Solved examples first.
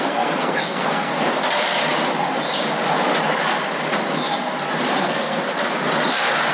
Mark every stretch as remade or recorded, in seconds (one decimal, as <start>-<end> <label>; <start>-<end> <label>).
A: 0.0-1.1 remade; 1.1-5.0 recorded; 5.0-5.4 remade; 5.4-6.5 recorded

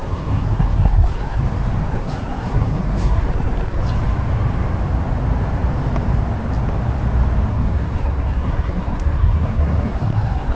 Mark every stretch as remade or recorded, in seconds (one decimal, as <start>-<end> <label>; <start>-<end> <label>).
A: 0.0-1.4 remade; 1.4-1.9 recorded; 1.9-3.8 remade; 3.8-7.5 recorded; 7.5-10.6 remade

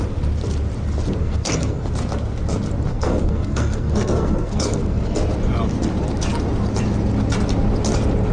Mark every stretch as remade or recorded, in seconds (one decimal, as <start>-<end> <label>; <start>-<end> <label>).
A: 0.0-1.2 recorded; 1.2-1.9 remade; 1.9-2.9 recorded; 2.9-5.2 remade; 5.2-8.3 recorded